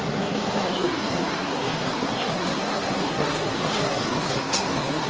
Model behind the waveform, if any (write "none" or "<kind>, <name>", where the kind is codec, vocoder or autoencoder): codec, SNAC